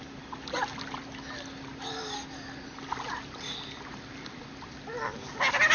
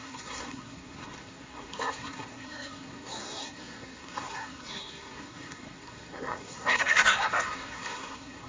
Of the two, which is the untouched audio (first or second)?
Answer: first